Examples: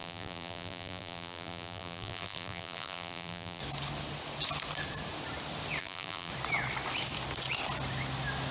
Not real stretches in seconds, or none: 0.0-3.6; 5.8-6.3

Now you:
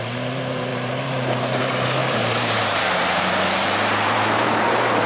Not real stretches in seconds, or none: 0.7-1.6; 2.0-5.1

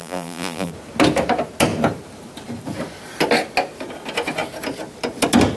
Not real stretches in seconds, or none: 0.0-0.7

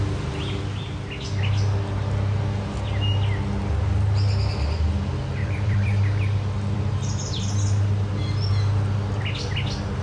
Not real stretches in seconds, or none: 5.4-7.4

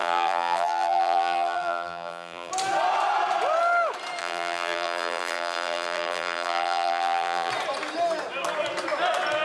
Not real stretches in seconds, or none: 0.0-2.5; 4.2-7.5

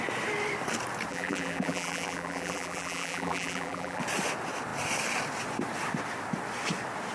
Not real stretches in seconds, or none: 1.1-4.0

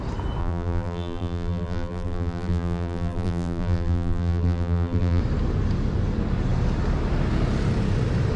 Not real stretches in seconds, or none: 0.4-5.2

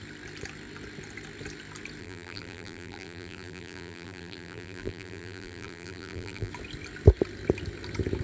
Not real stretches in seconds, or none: 2.0-6.5